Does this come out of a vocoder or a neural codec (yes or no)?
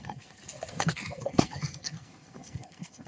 yes